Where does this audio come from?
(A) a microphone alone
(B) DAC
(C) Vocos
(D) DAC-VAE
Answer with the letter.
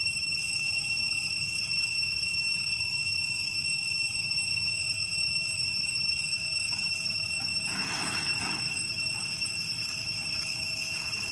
D